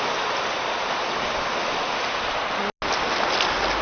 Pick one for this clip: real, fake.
real